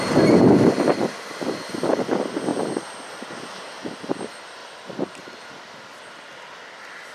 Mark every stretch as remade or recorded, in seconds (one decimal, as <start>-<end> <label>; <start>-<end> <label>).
0.0-7.1 recorded